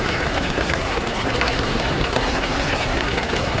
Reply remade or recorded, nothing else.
remade